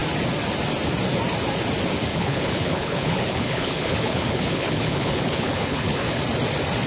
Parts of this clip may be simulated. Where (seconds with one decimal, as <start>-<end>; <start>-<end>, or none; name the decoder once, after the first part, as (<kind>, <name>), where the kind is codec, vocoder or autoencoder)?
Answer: 2.1-6.2 (codec, HILCodec)